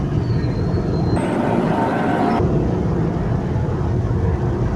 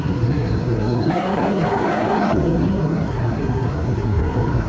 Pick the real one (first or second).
first